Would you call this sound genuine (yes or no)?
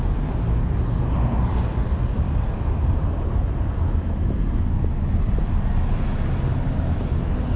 yes